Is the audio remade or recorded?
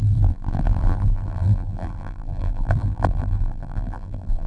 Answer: remade